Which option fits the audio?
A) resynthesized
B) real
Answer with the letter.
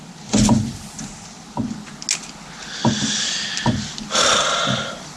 B